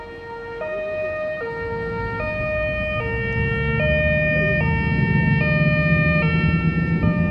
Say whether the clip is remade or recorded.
recorded